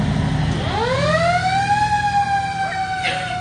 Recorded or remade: recorded